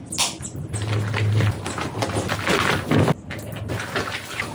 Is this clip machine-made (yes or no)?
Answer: no